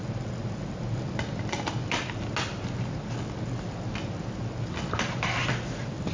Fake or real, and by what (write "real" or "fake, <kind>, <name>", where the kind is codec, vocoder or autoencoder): real